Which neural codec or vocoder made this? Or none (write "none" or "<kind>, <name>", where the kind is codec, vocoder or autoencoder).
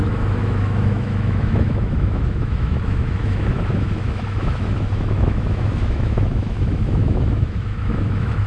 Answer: autoencoder, DAC-VAE